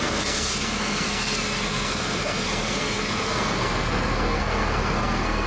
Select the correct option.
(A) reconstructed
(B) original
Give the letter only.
A